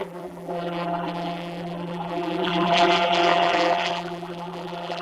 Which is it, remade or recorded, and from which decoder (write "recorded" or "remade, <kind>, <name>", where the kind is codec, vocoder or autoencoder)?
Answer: remade, vocoder, BigVGAN v2